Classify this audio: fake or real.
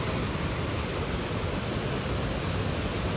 real